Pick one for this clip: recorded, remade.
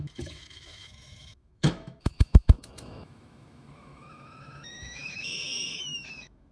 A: remade